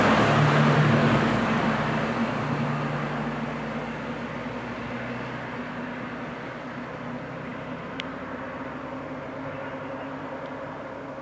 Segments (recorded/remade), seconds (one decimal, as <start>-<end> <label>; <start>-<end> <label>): 0.0-1.0 recorded; 1.0-1.6 remade; 1.6-11.2 recorded